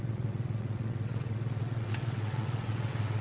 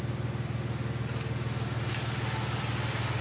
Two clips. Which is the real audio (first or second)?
second